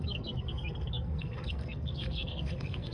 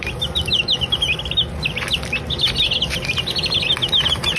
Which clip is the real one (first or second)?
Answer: second